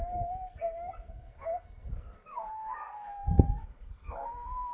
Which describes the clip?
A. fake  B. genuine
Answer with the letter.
A